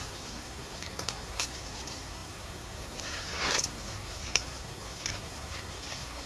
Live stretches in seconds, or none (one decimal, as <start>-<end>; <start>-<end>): none